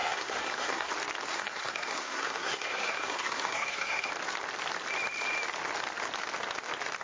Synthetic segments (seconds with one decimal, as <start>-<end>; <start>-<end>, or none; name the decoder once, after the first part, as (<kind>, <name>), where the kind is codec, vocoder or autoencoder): 0.0-0.9 (codec, SNAC); 1.3-4.1